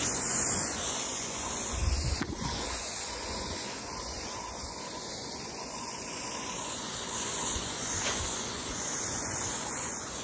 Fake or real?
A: fake